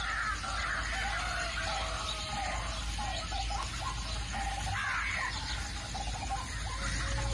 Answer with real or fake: real